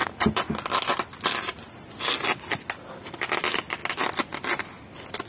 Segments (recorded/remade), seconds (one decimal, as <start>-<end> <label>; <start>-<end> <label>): 0.0-5.3 recorded